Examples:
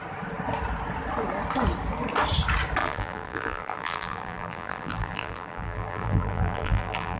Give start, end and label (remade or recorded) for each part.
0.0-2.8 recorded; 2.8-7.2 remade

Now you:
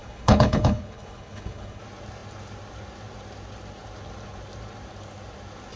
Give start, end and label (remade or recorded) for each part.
0.0-1.8 remade; 1.8-5.8 recorded

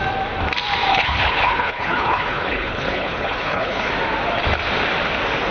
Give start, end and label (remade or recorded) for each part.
0.0-0.9 recorded; 0.9-3.9 remade; 3.9-5.5 recorded

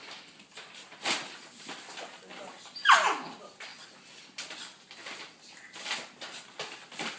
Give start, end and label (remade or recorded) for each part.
0.0-7.2 recorded

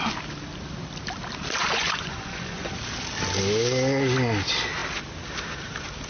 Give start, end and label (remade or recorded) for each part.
0.0-1.6 recorded; 1.6-2.7 remade; 2.7-6.1 recorded

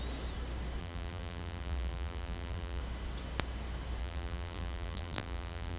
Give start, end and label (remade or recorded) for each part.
0.0-0.8 recorded; 0.8-2.8 remade; 2.8-4.0 recorded; 4.0-5.8 remade

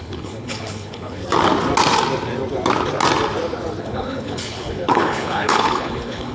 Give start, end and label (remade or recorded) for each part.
0.0-1.2 remade; 1.2-3.8 recorded; 3.8-6.3 remade

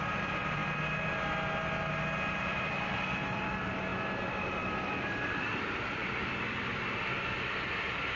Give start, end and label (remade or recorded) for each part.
0.0-0.6 remade; 0.6-2.4 recorded; 2.4-6.0 remade; 6.0-6.5 recorded; 6.5-8.2 remade